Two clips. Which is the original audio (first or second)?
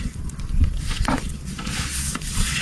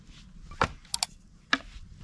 second